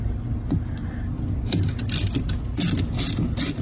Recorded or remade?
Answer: recorded